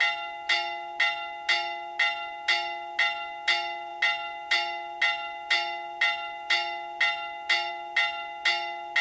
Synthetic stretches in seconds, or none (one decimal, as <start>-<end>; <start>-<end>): none